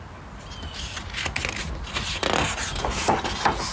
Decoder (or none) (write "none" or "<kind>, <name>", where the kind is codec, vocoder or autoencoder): none